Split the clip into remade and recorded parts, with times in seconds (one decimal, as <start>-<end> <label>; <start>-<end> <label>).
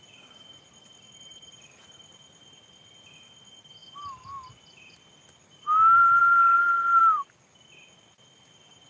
0.0-8.9 recorded